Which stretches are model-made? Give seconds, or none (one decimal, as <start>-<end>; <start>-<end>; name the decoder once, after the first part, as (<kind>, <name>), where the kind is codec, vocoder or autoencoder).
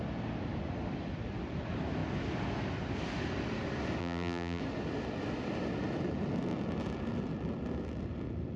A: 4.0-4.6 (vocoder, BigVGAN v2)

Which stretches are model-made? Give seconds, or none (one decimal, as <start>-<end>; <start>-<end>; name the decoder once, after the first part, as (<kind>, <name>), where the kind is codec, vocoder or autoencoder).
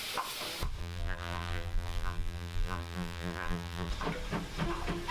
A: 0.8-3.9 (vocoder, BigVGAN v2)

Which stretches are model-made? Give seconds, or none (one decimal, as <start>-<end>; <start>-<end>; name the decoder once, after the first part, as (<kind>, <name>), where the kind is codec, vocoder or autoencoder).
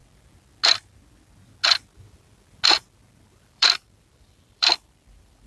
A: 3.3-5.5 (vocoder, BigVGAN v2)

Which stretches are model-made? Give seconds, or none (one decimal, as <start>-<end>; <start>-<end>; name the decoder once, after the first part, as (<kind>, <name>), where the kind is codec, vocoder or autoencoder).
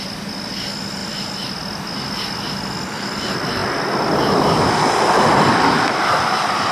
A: 3.6-6.1 (vocoder, BigVGAN v2)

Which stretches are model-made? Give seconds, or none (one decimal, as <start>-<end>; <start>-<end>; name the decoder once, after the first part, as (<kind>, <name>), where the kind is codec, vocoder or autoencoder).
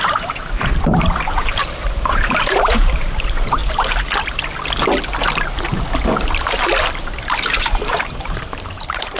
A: 0.0-3.6 (vocoder, BigVGAN v2); 7.6-9.2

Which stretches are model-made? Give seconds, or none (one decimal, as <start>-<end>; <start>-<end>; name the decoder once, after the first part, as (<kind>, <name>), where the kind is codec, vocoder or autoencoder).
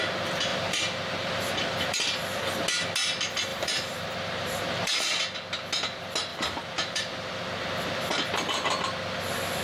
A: 0.5-2.0 (vocoder, BigVGAN v2); 3.5-5.0; 6.3-7.3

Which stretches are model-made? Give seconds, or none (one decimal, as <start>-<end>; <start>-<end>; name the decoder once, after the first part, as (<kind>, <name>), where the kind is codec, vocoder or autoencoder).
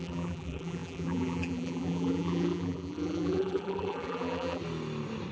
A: 0.0-4.6 (vocoder, BigVGAN v2)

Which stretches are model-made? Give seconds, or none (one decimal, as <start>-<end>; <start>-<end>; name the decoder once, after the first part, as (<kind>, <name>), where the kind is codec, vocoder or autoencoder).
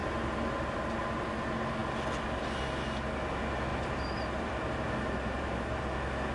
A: 3.7-5.8 (vocoder, BigVGAN v2)